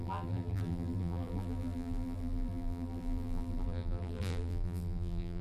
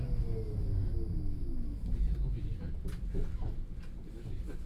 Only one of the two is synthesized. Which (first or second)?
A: first